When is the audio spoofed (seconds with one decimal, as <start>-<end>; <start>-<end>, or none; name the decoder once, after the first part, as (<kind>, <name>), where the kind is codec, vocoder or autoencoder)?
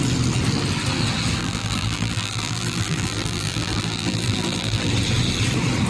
1.4-4.9 (vocoder, BigVGAN v2)